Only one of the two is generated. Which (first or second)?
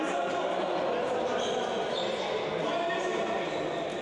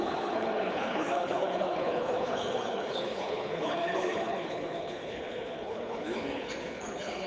second